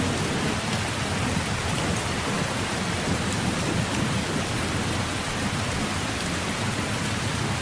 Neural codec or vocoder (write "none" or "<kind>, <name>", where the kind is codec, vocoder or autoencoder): none